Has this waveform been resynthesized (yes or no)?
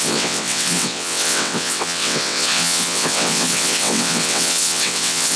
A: yes